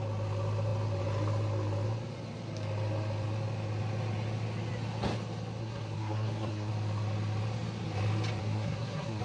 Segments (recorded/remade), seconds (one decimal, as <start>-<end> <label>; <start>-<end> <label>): 0.0-5.6 recorded; 5.6-6.7 remade; 6.7-8.4 recorded; 8.4-9.2 remade